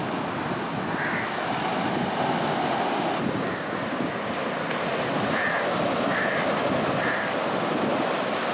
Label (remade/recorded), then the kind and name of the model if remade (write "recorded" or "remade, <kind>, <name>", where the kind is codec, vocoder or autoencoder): recorded